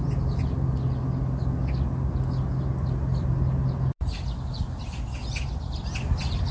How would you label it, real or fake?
real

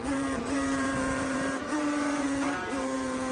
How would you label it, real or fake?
fake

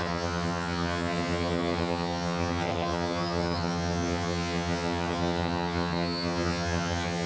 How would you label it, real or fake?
fake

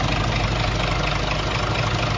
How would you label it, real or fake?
real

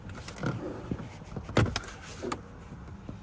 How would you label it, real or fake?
real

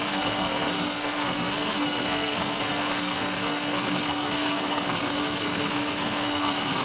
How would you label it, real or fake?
fake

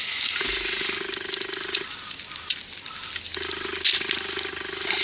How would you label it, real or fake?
real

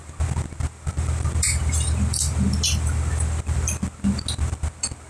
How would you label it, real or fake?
real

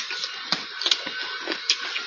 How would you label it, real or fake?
real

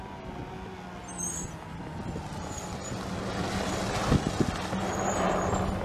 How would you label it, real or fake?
real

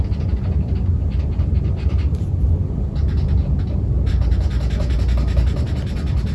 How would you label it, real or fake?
real